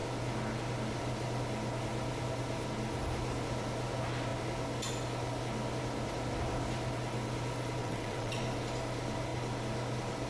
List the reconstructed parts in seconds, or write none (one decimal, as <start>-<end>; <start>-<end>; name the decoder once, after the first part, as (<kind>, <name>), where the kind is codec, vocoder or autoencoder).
7.8-8.4 (vocoder, WaveNeXt)